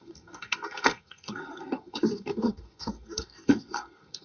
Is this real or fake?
fake